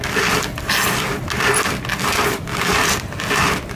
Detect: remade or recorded recorded